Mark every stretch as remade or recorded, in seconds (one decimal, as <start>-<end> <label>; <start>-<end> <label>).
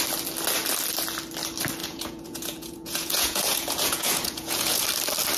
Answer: 0.0-1.8 recorded; 1.8-4.8 remade; 4.8-5.4 recorded